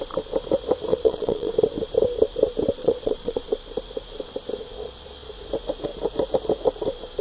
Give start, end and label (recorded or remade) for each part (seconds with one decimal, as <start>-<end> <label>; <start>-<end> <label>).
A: 0.0-0.9 recorded; 0.9-1.5 remade; 1.5-2.8 recorded; 2.8-3.5 remade; 3.5-7.2 recorded